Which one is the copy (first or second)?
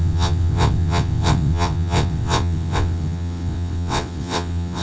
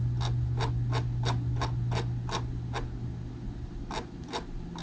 first